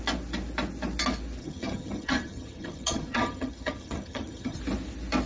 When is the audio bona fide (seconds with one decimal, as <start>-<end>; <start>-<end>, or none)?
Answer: 0.0-1.4; 4.6-5.3